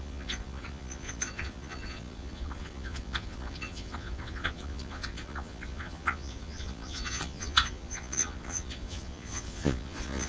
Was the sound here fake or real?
fake